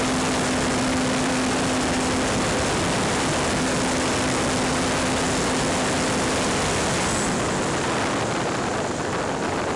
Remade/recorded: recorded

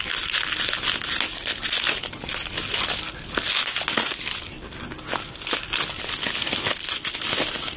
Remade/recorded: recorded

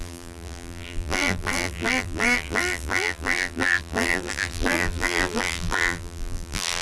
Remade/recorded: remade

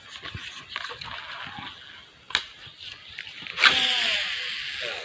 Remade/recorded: recorded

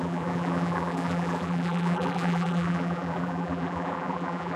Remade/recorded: remade